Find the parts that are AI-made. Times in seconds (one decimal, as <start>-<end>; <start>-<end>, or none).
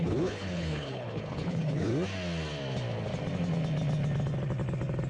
0.0-1.9